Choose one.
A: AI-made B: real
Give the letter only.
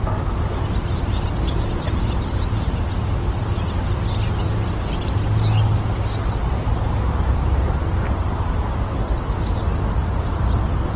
B